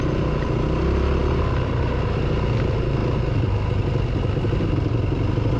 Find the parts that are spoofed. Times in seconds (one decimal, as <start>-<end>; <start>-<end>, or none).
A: none